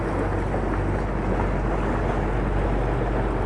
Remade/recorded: recorded